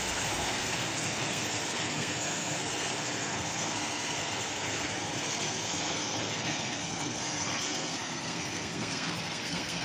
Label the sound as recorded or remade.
remade